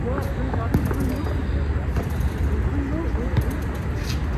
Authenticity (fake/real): real